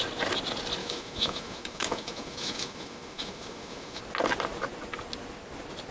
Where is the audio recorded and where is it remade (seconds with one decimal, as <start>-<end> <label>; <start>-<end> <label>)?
0.0-0.8 recorded; 0.8-4.0 remade; 4.0-5.9 recorded